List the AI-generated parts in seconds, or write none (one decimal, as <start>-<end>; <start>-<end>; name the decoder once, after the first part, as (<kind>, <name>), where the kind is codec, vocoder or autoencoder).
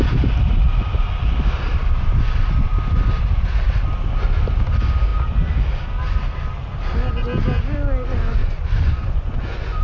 8.4-9.8 (vocoder, Vocos)